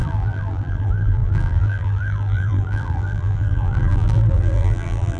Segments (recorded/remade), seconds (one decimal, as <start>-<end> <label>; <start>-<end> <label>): 0.0-5.2 remade